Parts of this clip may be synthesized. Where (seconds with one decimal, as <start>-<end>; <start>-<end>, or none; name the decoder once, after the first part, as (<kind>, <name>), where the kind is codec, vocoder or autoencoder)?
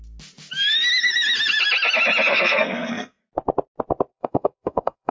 2.3-3.2 (codec, SNAC); 4.1-5.1